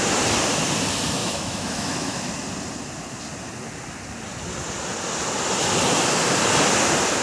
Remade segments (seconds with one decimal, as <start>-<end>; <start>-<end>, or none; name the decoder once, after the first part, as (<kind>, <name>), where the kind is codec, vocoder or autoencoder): 1.2-2.3 (autoencoder, DAC-VAE)